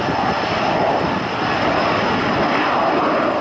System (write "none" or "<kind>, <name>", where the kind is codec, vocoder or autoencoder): none